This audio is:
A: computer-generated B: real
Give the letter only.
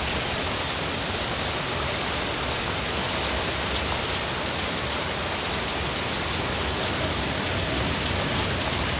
B